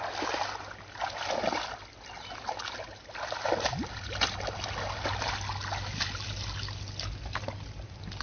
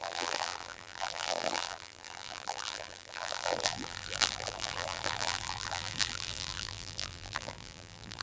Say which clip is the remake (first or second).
second